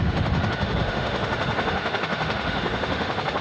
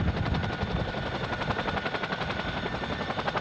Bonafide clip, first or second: second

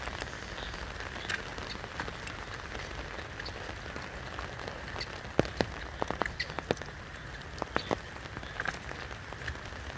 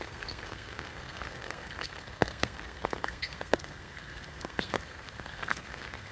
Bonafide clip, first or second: first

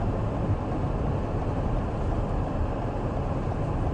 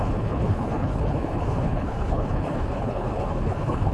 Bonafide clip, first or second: first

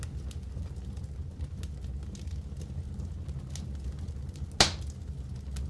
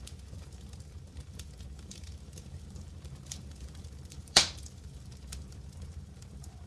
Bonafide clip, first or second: first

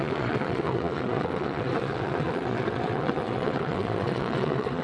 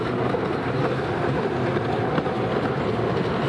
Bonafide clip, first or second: second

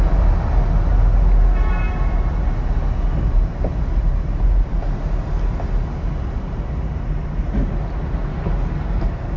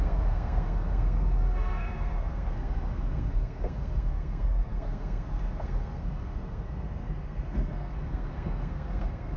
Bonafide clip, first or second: first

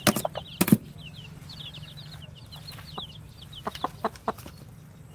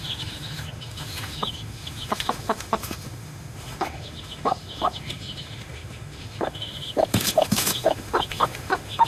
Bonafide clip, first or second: first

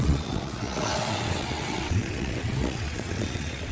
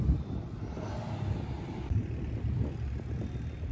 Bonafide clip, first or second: second